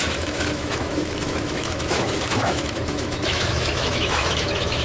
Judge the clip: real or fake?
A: fake